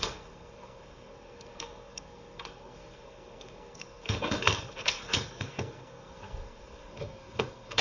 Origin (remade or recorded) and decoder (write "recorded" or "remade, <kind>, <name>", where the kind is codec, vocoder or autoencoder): remade, codec, SNAC